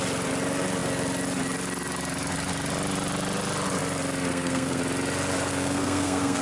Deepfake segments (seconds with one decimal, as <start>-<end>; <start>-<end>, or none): 4.3-4.8; 5.5-6.4